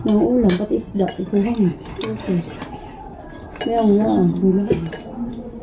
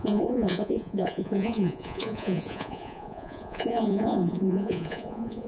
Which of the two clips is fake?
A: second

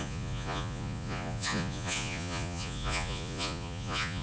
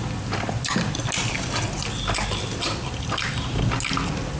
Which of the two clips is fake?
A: first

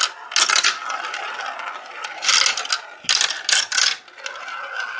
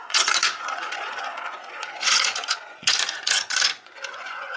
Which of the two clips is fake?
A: second